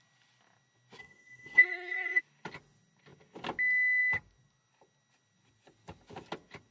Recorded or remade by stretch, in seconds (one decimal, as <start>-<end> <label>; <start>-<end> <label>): 0.0-1.0 recorded; 1.0-2.2 remade; 2.2-6.7 recorded